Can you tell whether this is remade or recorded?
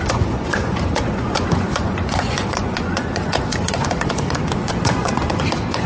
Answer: remade